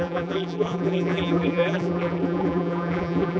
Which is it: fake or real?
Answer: fake